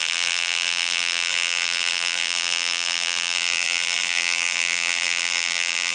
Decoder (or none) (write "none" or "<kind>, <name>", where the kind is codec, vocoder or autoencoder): vocoder, BigVGAN v2